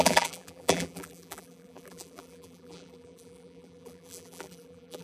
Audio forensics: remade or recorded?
remade